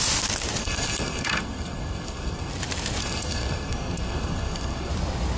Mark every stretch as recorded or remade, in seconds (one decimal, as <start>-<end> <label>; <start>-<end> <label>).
0.0-0.6 recorded; 0.6-2.5 remade; 2.5-3.0 recorded; 3.0-4.9 remade; 4.9-5.4 recorded

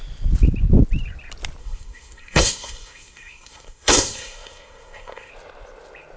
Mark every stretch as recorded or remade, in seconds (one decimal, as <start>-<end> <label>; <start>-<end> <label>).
0.0-1.6 recorded; 1.6-5.3 remade; 5.3-6.2 recorded

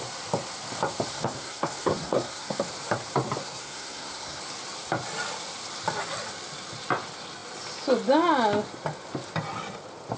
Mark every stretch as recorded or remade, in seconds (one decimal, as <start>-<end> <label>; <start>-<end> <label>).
0.0-1.1 recorded; 1.1-2.7 remade; 2.7-3.4 recorded; 3.4-4.4 remade; 4.4-10.2 recorded